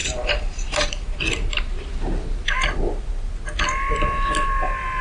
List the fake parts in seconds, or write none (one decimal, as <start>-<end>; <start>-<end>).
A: 0.0-1.2